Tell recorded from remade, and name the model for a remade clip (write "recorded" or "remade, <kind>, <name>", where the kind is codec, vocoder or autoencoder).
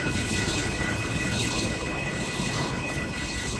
remade, codec, HILCodec